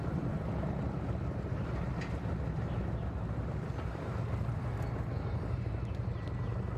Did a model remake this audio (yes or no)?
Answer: no